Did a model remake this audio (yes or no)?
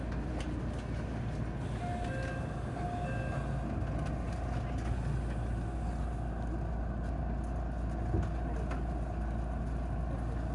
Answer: no